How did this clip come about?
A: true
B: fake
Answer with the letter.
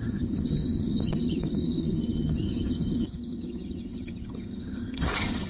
B